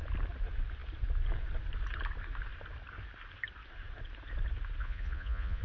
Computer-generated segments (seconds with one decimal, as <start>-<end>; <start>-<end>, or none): 4.8-5.6